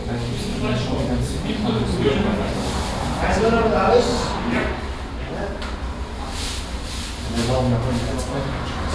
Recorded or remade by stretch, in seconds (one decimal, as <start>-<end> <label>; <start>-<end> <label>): 0.0-0.5 recorded; 0.5-2.5 remade; 2.5-8.9 recorded